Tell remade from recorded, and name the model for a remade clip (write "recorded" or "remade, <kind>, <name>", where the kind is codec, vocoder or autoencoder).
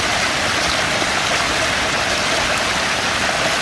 recorded